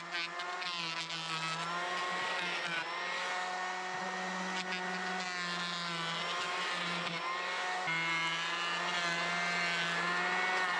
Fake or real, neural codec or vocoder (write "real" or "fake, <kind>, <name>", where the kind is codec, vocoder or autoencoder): real